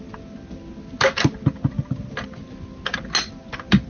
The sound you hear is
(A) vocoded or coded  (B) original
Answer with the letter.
B